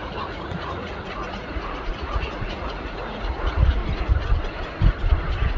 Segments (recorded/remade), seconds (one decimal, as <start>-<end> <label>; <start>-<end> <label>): 0.0-3.8 remade; 3.8-5.6 recorded